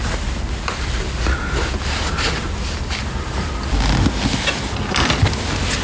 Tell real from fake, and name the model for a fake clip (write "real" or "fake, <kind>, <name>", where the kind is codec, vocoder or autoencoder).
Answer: real